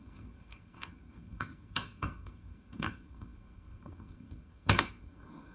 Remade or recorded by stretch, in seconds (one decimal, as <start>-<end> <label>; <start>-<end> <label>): 0.0-5.5 remade